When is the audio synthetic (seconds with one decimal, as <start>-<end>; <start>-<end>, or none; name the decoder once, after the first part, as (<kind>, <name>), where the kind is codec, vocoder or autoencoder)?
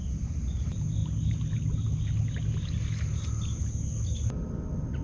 none